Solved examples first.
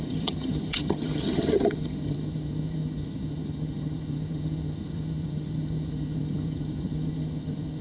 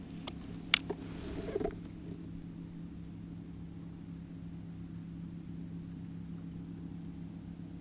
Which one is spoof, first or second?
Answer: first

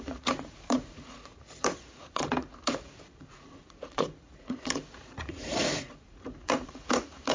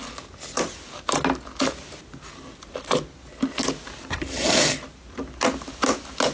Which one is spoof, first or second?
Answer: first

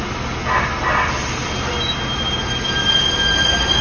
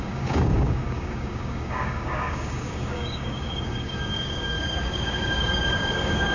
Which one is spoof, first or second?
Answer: second